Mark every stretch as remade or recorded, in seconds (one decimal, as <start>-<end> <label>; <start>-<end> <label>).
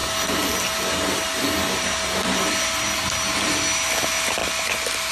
0.0-5.1 recorded